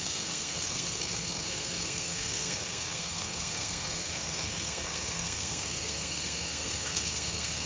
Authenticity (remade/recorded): remade